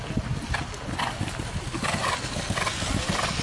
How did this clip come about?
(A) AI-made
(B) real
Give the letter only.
B